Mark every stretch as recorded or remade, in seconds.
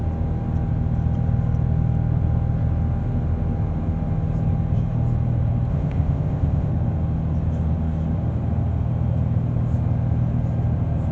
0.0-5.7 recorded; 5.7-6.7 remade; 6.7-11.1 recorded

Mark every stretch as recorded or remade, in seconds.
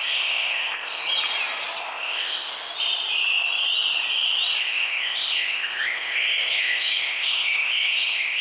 0.0-1.0 remade; 1.0-1.8 recorded; 1.8-2.5 remade; 2.5-4.6 recorded; 4.6-8.4 remade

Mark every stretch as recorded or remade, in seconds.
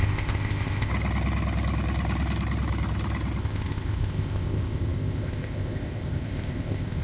0.0-0.9 remade; 0.9-3.4 recorded; 3.4-7.0 remade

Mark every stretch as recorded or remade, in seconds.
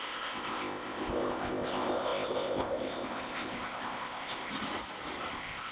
0.0-4.5 remade; 4.5-5.3 recorded; 5.3-5.7 remade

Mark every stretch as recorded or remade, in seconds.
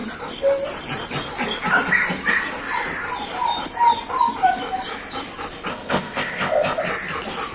0.0-5.7 recorded; 5.7-6.8 remade; 6.8-7.5 recorded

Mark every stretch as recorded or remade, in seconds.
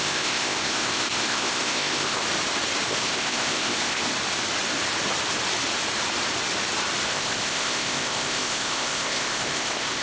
0.0-2.2 remade; 2.2-2.9 recorded; 2.9-4.1 remade; 4.1-7.1 recorded; 7.1-10.0 remade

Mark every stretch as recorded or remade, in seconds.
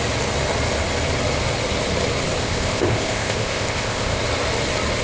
0.0-2.4 recorded; 2.4-4.2 remade; 4.2-5.0 recorded